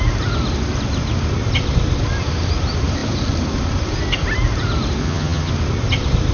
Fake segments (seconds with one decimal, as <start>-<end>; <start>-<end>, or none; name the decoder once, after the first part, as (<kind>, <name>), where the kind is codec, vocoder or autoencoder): 5.0-5.5 (vocoder, HiFi-GAN)